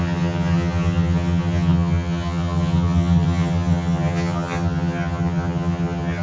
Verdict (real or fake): fake